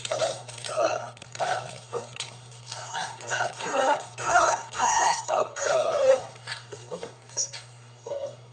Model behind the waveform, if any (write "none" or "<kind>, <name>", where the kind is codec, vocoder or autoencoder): codec, SNAC